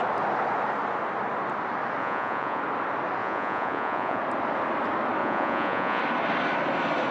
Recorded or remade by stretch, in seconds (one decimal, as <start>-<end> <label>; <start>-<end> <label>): 0.0-2.0 recorded; 2.0-2.6 remade; 2.6-3.2 recorded; 3.2-4.2 remade; 4.2-5.2 recorded; 5.2-6.0 remade; 6.0-7.1 recorded

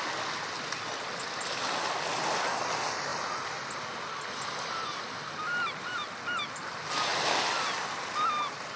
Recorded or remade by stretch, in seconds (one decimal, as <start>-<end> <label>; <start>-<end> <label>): 0.0-8.8 recorded

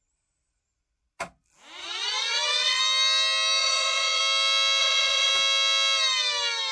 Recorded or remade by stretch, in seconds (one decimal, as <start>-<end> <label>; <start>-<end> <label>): 0.0-1.8 recorded; 1.8-2.8 remade; 2.8-3.6 recorded; 3.6-4.2 remade; 4.2-4.8 recorded; 4.8-5.3 remade; 5.3-6.7 recorded

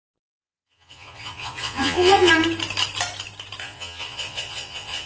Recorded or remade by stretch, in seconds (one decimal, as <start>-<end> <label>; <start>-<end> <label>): 0.0-0.4 recorded; 0.4-2.3 remade; 2.3-3.6 recorded; 3.6-5.1 remade

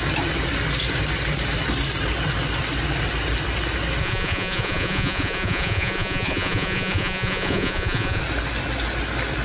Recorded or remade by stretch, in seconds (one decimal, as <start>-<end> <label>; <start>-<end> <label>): 0.0-4.0 recorded; 4.0-8.2 remade; 8.2-9.4 recorded

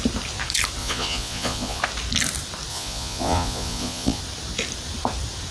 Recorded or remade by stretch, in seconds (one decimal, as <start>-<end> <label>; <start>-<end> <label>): 0.0-0.8 recorded; 0.8-1.8 remade; 1.8-2.7 recorded; 2.7-4.2 remade; 4.2-5.5 recorded

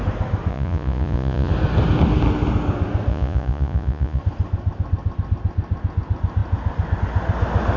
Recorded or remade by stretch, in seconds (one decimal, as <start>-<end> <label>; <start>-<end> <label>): 0.0-0.5 recorded; 0.5-1.5 remade; 1.5-3.1 recorded; 3.1-4.2 remade; 4.2-7.8 recorded

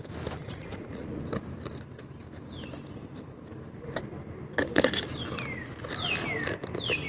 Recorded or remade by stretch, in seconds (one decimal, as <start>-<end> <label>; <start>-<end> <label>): 0.0-0.4 recorded; 0.4-1.2 remade; 1.2-7.1 recorded